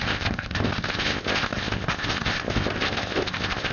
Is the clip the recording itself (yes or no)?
no